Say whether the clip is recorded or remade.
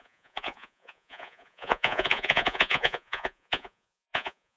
remade